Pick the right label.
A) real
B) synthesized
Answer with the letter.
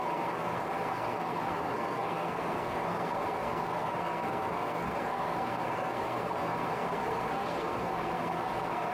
B